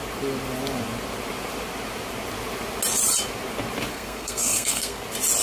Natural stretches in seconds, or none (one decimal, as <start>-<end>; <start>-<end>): 0.0-3.9; 5.0-5.4